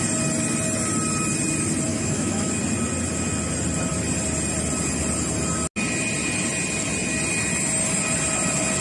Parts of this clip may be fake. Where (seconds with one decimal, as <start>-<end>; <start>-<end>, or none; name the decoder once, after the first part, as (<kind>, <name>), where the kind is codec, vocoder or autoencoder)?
1.9-2.5 (autoencoder, DAC-VAE)